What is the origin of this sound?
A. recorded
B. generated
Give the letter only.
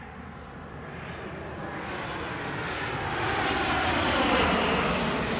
A